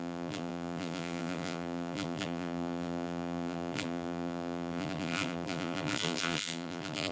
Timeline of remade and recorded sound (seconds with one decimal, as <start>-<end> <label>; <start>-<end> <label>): 0.0-7.1 remade